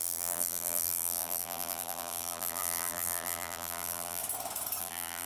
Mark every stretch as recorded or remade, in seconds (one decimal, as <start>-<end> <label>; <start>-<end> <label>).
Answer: 0.0-4.2 remade; 4.2-4.8 recorded; 4.8-5.3 remade